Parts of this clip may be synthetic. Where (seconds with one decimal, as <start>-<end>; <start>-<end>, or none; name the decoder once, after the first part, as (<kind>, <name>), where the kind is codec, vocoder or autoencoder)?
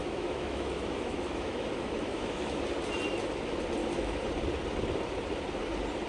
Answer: 0.0-2.6 (autoencoder, DAC-VAE); 3.8-4.3